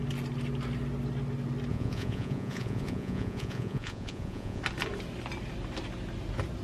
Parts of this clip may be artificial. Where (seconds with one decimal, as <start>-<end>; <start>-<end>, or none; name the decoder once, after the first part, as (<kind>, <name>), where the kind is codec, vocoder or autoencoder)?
1.7-4.6 (vocoder, Vocos)